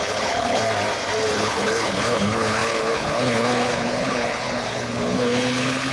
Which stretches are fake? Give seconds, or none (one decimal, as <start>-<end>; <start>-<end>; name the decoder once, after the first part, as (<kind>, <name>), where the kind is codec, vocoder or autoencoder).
0.0-0.6 (codec, HILCodec); 1.3-5.9